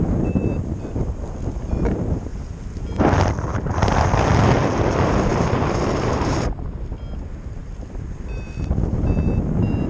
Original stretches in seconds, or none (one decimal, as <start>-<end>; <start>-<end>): 0.0-5.3; 6.9-7.6; 9.0-9.9